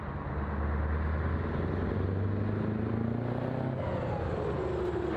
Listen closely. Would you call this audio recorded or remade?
recorded